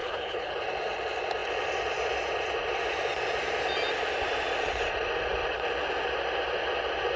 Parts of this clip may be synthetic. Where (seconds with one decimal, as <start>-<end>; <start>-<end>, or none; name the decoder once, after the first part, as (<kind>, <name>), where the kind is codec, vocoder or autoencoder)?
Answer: 0.0-0.5 (codec, HILCodec)

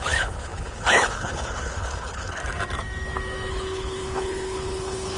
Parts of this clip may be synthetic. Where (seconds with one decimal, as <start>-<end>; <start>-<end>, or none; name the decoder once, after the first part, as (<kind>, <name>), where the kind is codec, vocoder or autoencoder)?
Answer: 0.0-2.4 (codec, HILCodec); 3.5-5.2

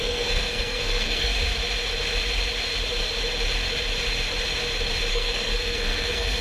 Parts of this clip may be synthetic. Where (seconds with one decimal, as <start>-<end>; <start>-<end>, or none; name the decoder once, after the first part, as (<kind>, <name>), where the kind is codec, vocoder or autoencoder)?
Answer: 0.0-1.3 (codec, SNAC); 5.1-6.4

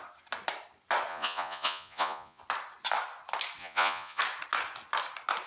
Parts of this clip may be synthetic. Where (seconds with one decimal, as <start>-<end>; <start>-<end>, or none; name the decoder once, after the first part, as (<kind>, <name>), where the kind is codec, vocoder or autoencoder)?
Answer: 1.1-2.4 (vocoder, Vocos); 3.6-4.2